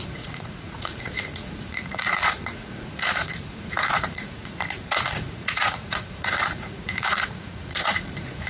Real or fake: fake